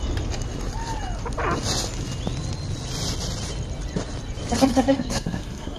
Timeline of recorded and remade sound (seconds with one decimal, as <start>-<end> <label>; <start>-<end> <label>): 0.0-4.7 recorded; 4.7-5.8 remade

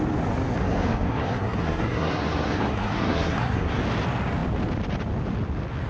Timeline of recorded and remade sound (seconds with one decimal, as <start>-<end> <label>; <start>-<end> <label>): 0.0-0.6 recorded; 0.6-3.8 remade; 3.8-5.9 recorded

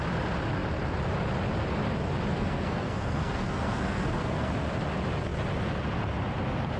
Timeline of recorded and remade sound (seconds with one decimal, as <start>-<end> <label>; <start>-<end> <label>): 0.0-2.3 recorded; 2.3-4.5 remade; 4.5-6.8 recorded